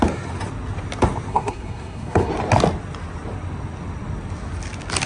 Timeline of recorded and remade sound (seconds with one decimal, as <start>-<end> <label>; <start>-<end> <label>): 0.0-1.3 recorded; 1.3-2.3 remade; 2.3-5.1 recorded